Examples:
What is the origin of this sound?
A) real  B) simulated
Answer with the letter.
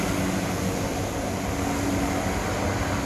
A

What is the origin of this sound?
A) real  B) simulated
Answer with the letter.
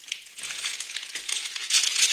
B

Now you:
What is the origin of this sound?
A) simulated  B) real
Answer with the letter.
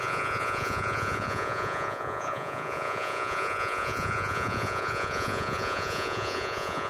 A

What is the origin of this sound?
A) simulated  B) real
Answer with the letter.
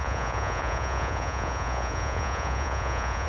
A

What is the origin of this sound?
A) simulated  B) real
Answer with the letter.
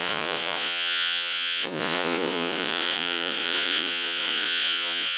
A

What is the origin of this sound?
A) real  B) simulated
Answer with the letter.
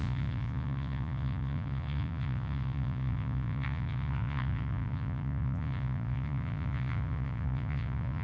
B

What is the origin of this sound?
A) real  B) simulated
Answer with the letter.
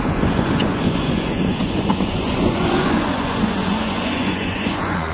B